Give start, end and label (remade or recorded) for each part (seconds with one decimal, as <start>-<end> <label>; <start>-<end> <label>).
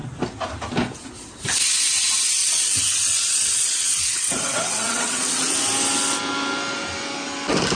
0.0-2.4 recorded; 2.4-5.5 remade; 5.5-7.7 recorded